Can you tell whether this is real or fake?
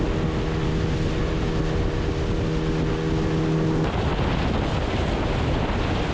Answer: real